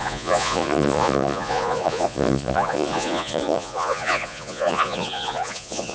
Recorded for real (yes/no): no